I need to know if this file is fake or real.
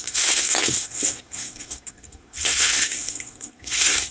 fake